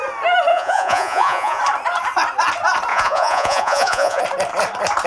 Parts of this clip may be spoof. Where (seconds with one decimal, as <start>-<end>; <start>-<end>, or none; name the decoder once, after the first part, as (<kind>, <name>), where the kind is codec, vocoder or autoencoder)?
0.5-1.6 (vocoder, Vocos); 2.9-4.2